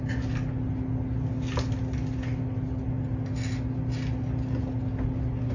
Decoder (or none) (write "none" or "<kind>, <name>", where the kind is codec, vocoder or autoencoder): none